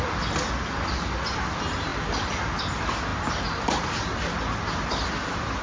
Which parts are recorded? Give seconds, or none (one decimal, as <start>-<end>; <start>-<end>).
0.0-5.6